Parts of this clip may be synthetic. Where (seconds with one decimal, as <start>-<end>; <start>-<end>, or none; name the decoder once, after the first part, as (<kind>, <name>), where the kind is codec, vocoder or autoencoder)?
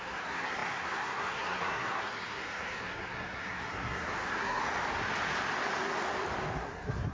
0.0-4.6 (codec, SNAC); 6.6-7.1